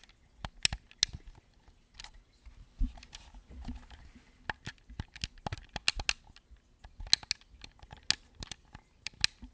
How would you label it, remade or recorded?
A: recorded